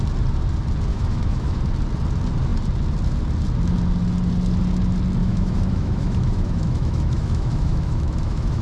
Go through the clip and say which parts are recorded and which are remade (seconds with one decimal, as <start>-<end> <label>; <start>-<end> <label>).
0.0-0.9 recorded; 0.9-1.6 remade; 1.6-5.2 recorded; 5.2-8.6 remade

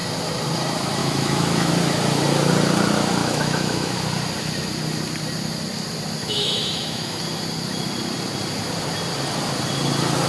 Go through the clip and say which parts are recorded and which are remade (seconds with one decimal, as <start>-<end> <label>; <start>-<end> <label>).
0.0-1.0 recorded; 1.0-1.7 remade; 1.7-3.2 recorded; 3.2-4.0 remade; 4.0-6.2 recorded; 6.2-7.2 remade; 7.2-10.3 recorded

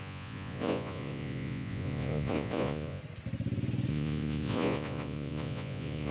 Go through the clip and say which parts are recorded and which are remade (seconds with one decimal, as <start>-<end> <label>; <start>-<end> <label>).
0.0-3.0 remade; 3.0-3.9 recorded; 3.9-6.1 remade